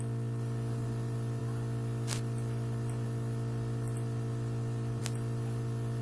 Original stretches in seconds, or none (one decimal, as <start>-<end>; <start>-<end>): 0.0-6.0